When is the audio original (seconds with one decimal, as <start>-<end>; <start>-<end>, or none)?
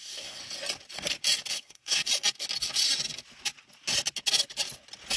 0.4-1.5; 2.0-5.2